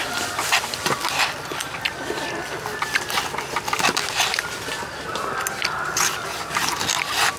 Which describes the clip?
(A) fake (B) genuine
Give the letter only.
B